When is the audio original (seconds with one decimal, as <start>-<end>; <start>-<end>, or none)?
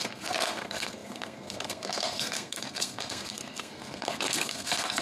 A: none